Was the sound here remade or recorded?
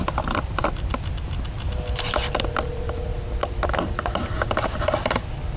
recorded